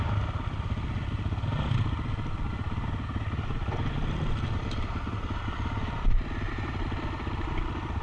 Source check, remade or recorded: recorded